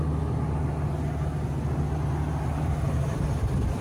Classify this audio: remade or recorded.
recorded